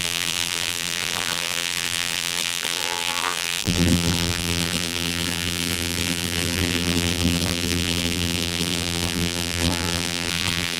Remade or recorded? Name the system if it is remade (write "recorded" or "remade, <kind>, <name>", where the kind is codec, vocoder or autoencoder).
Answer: remade, vocoder, BigVGAN v2